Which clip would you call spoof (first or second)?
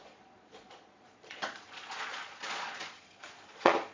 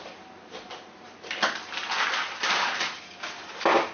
first